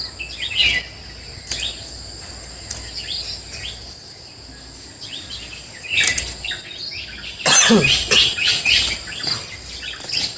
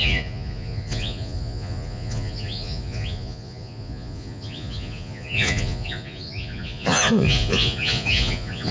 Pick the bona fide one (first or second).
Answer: first